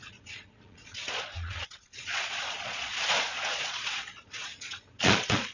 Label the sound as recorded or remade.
remade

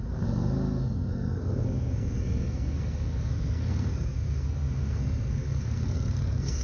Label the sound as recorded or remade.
remade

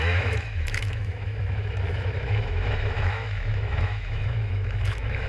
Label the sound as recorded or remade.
remade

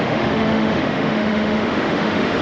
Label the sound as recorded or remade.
remade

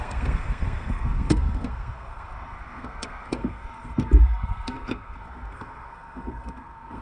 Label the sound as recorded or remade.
remade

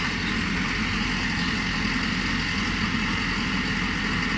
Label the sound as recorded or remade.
recorded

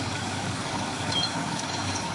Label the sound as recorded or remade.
remade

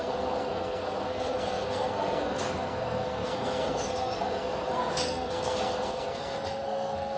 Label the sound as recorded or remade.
remade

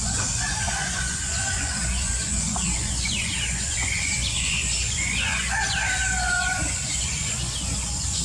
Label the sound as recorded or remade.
remade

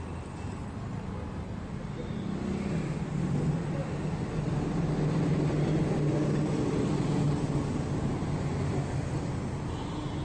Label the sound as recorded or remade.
recorded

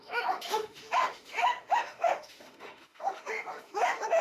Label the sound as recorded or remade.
remade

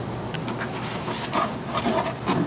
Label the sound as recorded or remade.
recorded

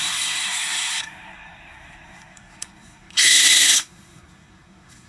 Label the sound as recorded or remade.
remade